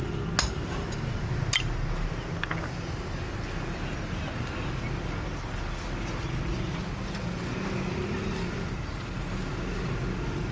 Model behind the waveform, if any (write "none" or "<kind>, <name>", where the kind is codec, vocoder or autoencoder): none